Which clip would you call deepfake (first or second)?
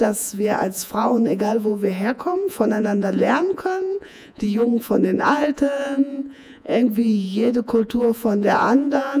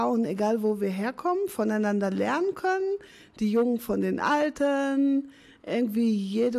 first